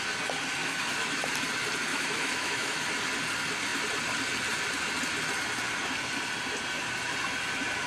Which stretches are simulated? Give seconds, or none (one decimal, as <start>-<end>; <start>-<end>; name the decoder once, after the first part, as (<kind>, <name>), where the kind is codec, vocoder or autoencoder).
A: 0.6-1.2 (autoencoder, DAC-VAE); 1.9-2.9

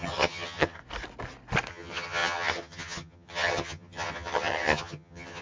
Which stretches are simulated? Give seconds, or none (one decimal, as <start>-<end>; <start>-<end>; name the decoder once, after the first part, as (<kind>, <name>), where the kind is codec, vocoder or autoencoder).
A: 0.0-0.8 (vocoder, HiFi-GAN); 1.7-5.4

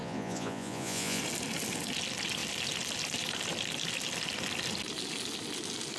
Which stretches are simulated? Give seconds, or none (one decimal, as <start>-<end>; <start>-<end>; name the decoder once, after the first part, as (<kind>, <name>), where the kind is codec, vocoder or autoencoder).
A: 0.0-1.2 (vocoder, Vocos)